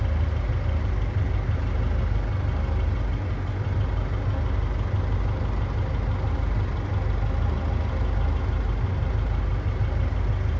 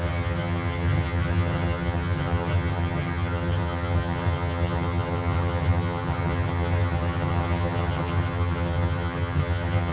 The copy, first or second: second